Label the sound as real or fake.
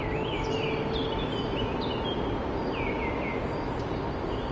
real